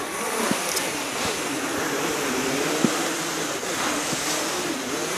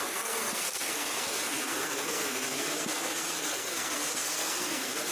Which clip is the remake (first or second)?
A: second